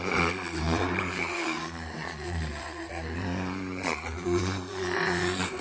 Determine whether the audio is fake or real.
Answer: fake